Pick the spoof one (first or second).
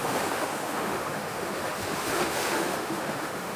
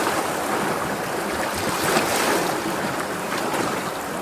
first